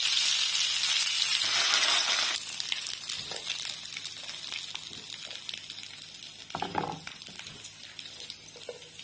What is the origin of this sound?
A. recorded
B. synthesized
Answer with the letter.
A